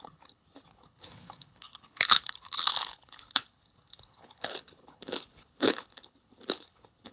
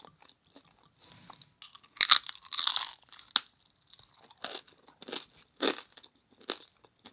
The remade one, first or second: first